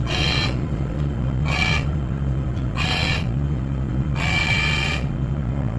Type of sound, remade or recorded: remade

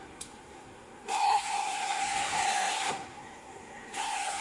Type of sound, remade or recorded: remade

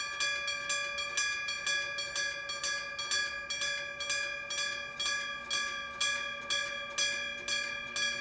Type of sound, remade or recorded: recorded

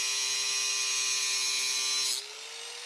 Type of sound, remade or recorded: recorded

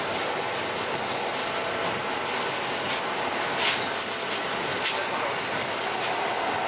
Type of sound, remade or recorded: recorded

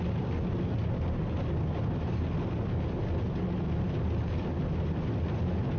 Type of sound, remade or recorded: recorded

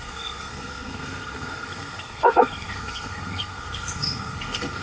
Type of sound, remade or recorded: remade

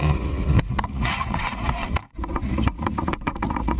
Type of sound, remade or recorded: remade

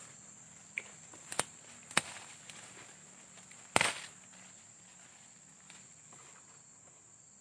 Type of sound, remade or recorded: recorded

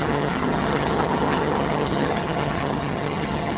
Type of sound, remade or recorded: remade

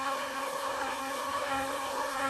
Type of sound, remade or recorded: remade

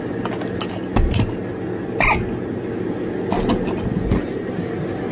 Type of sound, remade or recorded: recorded